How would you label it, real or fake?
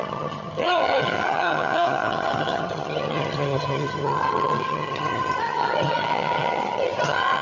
fake